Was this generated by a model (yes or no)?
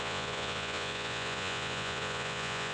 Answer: yes